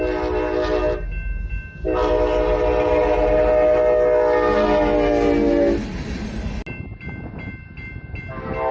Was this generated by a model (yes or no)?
no